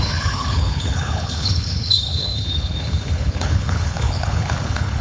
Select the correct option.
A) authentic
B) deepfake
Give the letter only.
B